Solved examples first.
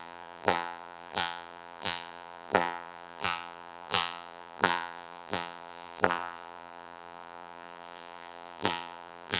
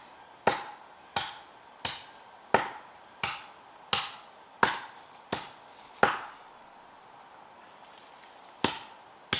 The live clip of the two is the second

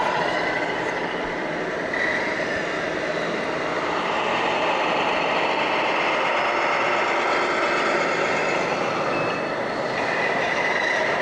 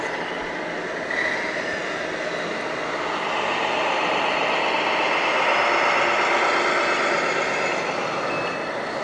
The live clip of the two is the second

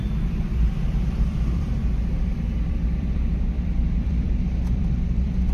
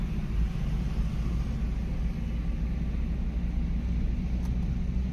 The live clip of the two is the second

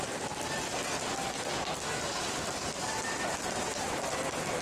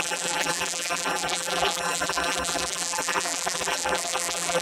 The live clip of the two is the first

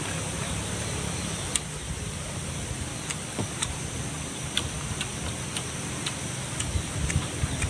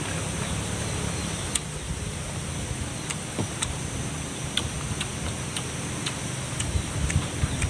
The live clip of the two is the second